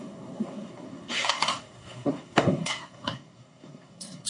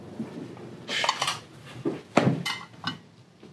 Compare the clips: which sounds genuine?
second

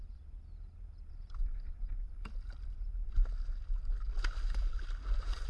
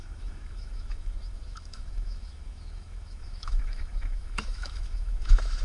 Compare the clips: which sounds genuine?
first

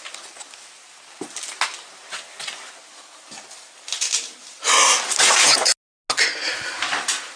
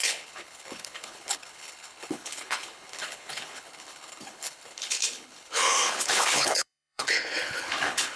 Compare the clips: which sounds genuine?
first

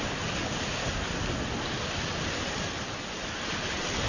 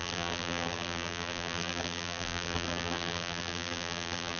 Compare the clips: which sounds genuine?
first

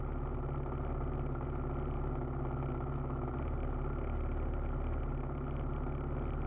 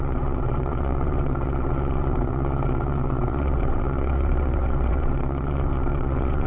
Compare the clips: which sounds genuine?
first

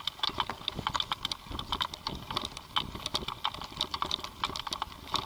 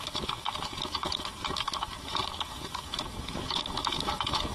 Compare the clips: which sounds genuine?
first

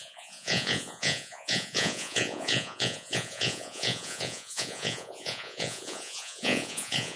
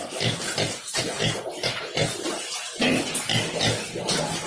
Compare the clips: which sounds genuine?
second